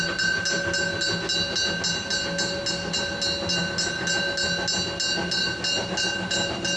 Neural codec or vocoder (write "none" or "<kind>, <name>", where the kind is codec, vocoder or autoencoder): none